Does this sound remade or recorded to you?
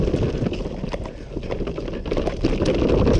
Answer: recorded